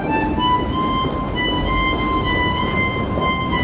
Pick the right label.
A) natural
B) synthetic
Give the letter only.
A